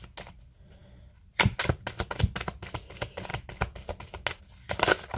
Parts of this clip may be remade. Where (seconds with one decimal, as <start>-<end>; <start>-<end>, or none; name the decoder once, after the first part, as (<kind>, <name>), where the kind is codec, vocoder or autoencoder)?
none